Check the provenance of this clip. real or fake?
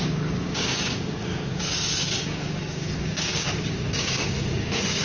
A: fake